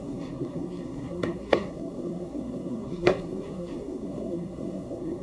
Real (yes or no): no